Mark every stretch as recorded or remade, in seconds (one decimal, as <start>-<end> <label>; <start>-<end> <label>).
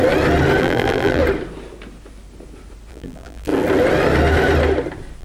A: 0.0-0.6 recorded; 0.6-1.2 remade; 1.2-2.9 recorded; 2.9-3.5 remade; 3.5-5.2 recorded